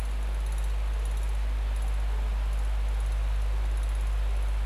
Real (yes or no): yes